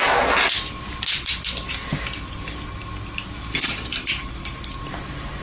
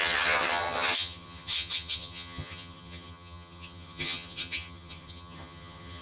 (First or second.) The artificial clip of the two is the second